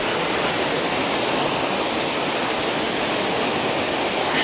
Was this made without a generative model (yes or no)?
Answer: yes